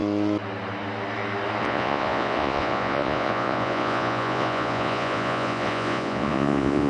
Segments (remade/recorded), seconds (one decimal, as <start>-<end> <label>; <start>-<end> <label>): 0.0-1.6 recorded; 1.6-6.9 remade